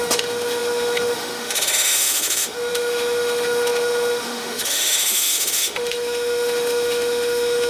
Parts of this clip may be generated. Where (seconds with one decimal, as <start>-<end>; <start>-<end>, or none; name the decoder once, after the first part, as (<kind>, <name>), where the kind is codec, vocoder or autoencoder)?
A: 0.0-7.7 (autoencoder, DAC-VAE)